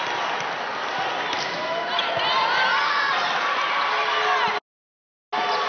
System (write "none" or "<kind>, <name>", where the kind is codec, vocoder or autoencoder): none